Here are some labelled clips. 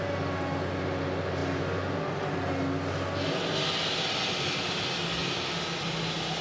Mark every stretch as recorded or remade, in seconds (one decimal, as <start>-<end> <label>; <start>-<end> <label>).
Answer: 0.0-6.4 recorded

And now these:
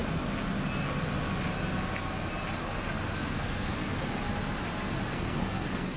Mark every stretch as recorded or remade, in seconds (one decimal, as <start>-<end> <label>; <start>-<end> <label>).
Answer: 0.0-2.6 recorded; 2.6-4.1 remade; 4.1-5.1 recorded; 5.1-6.0 remade

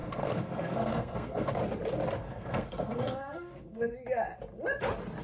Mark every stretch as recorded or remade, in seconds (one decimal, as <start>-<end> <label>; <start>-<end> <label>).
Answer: 0.0-1.5 remade; 1.5-2.2 recorded; 2.2-3.9 remade; 3.9-5.2 recorded